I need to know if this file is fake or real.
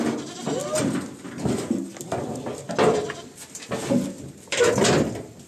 real